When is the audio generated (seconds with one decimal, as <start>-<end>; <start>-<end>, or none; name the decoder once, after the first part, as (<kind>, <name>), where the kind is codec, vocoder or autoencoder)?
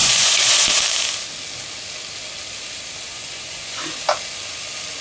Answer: 0.0-0.8 (vocoder, Vocos); 3.1-3.8